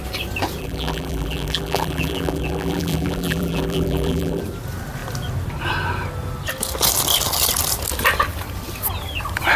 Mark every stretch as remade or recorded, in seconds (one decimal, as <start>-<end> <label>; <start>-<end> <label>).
0.0-0.6 recorded; 0.6-4.4 remade; 4.4-9.6 recorded